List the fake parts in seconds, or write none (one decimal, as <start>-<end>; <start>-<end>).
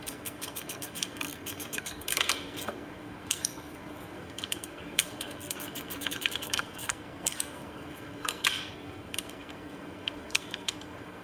0.0-11.2